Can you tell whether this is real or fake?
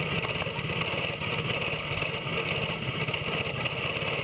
real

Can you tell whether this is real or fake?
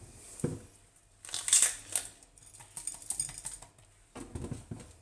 real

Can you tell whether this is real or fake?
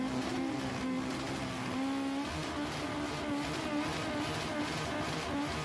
real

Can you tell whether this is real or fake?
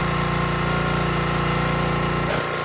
real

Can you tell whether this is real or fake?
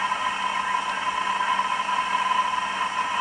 real